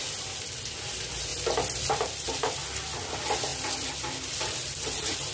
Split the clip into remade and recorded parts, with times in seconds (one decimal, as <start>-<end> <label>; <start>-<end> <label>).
0.0-1.3 remade; 1.3-1.9 recorded; 1.9-3.5 remade; 3.5-4.3 recorded; 4.3-5.3 remade